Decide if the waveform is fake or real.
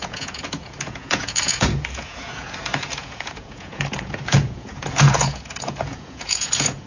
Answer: fake